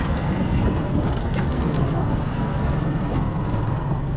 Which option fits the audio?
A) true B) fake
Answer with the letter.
B